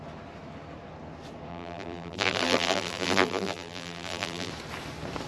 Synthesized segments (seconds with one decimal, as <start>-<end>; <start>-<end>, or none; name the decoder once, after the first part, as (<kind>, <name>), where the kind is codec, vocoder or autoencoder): 1.5-4.5 (vocoder, BigVGAN v2)